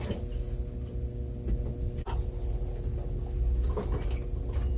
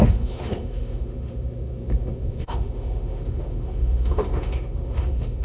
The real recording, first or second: first